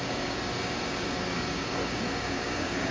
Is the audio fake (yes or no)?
yes